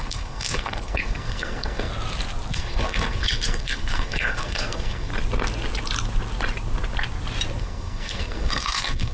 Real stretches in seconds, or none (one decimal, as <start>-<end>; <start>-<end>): 1.9-2.5; 5.1-7.6